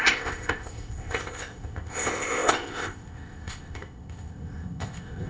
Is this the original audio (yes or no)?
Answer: no